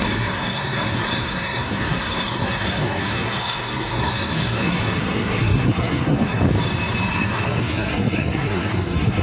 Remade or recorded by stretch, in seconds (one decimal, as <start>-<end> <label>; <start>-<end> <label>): 0.0-6.4 remade; 6.4-7.1 recorded; 7.1-9.2 remade